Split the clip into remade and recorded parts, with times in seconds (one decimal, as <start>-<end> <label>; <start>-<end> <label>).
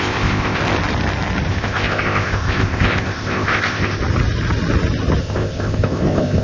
0.0-0.6 remade; 0.6-1.5 recorded; 1.5-4.0 remade; 4.0-5.2 recorded; 5.2-6.4 remade